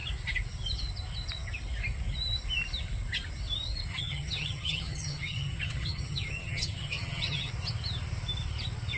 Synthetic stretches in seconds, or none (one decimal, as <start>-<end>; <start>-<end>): 3.9-7.5

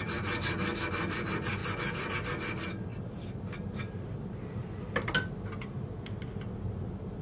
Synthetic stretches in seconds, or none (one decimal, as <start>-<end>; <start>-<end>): 1.6-2.1

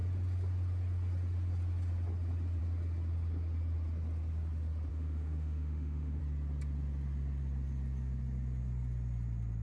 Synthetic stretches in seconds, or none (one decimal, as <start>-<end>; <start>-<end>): 4.9-6.2